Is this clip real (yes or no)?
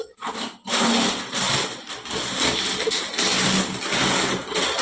no